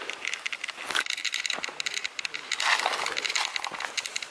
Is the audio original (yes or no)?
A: yes